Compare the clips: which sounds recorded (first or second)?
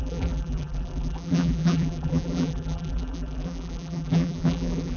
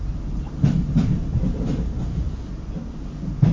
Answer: second